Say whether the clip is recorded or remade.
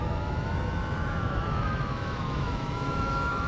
remade